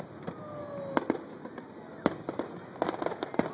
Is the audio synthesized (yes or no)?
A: no